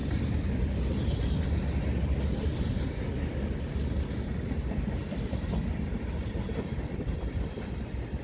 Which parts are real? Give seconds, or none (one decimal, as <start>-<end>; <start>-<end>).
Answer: 0.0-8.2